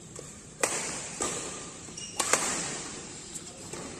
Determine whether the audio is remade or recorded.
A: remade